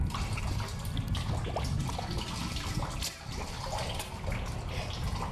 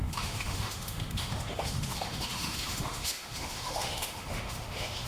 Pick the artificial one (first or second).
second